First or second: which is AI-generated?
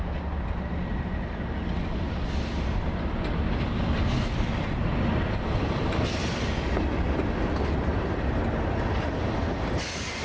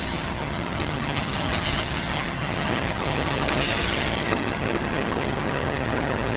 second